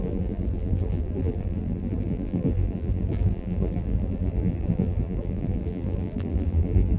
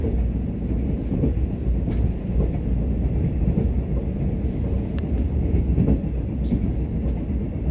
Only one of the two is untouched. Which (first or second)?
second